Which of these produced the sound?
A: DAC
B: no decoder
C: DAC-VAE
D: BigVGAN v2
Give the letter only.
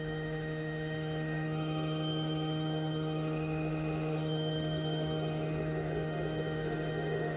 C